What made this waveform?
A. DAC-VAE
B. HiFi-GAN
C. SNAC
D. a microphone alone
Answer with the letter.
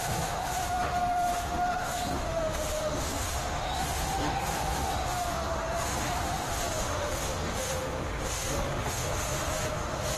A